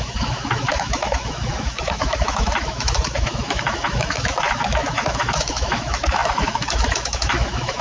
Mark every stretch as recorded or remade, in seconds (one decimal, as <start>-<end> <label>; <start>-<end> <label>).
0.0-7.8 remade